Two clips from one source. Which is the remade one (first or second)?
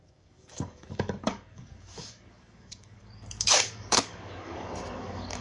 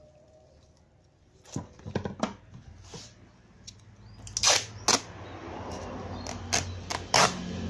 first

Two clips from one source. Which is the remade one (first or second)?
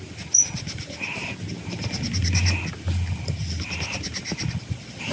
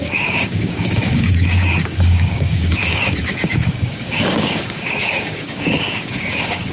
second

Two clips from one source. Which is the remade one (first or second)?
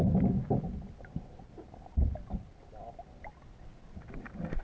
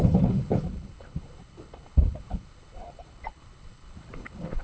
second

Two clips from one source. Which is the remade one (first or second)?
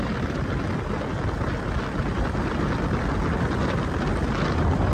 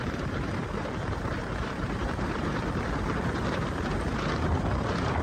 second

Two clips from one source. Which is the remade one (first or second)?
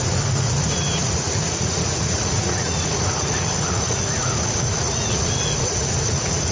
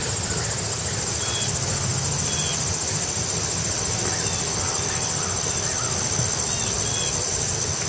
first